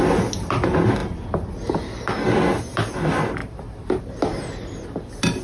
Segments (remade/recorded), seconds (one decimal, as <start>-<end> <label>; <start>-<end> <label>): 0.0-5.4 recorded